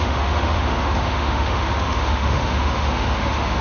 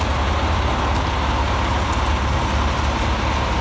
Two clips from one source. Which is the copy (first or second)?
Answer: first